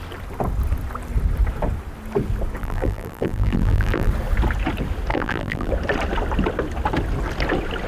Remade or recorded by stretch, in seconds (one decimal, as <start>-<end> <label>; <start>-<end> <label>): 0.0-2.6 recorded; 2.6-4.1 remade; 4.1-5.1 recorded; 5.1-5.7 remade; 5.7-7.9 recorded